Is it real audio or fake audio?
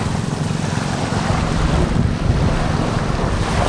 real